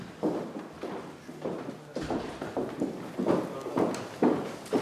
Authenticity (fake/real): real